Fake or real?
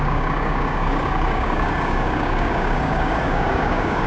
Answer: fake